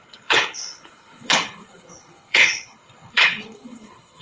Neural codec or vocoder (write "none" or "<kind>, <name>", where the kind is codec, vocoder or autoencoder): codec, HILCodec